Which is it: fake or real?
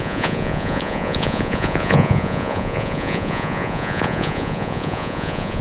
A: fake